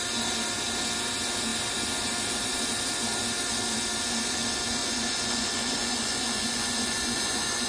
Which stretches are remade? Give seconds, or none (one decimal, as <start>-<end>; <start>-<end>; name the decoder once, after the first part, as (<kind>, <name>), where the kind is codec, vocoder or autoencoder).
4.8-7.7 (vocoder, Vocos)